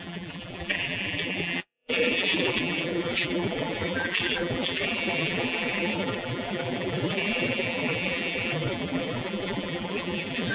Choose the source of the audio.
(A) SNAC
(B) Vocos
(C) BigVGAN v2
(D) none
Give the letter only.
C